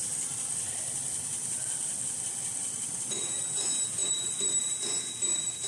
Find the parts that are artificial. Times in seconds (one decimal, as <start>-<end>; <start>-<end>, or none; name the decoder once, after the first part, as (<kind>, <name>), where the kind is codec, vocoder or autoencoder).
4.0-5.1 (vocoder, BigVGAN v2)